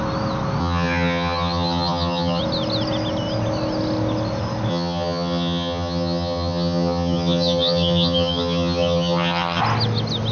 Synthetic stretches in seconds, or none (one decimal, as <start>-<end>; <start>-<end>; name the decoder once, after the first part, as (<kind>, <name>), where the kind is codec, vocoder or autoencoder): 0.6-2.4 (vocoder, HiFi-GAN); 4.7-9.6

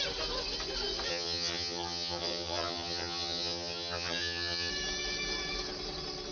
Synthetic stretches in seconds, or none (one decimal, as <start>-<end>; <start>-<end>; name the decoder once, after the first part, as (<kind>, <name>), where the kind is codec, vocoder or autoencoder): 1.1-4.7 (vocoder, HiFi-GAN)

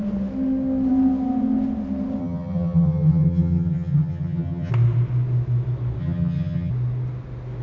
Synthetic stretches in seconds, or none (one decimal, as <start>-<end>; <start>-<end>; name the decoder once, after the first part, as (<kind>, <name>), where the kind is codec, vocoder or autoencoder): 2.2-4.7 (vocoder, HiFi-GAN); 6.0-6.7

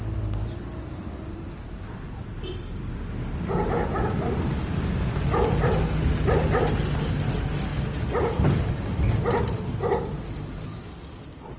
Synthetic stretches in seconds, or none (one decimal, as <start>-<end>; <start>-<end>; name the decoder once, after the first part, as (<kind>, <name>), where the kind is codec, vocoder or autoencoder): none

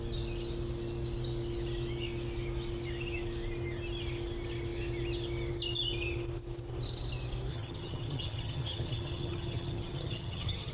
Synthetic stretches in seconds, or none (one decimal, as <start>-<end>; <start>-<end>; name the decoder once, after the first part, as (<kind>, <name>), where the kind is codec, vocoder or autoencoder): 7.5-10.7 (vocoder, HiFi-GAN)